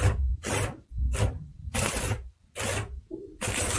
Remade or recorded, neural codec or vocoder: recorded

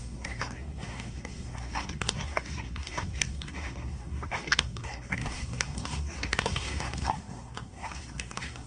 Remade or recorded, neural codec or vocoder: remade, codec, SNAC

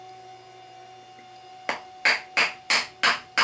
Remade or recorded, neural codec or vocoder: recorded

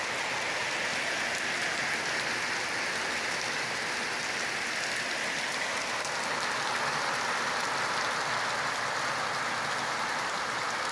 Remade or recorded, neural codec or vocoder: recorded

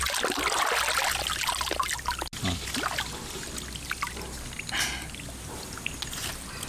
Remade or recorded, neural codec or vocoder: recorded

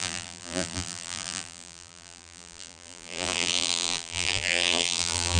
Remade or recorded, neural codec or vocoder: remade, vocoder, BigVGAN v2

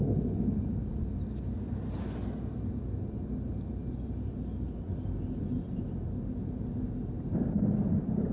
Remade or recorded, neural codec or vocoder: recorded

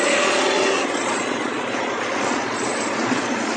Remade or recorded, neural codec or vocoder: remade, vocoder, Vocos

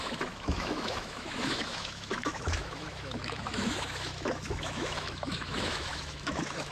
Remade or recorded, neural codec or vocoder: remade, autoencoder, DAC-VAE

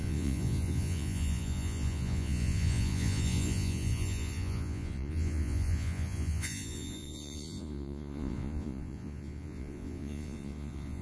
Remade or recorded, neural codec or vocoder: remade, vocoder, Vocos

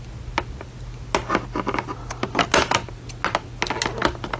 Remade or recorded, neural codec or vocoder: recorded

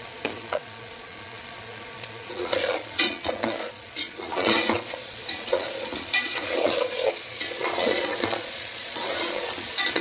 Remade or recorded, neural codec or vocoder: remade, vocoder, Vocos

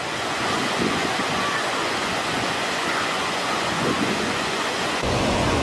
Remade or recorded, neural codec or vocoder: remade, vocoder, Vocos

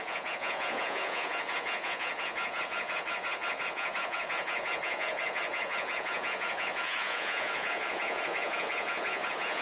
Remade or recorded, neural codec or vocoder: remade, vocoder, Vocos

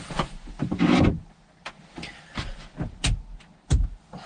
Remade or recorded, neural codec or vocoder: recorded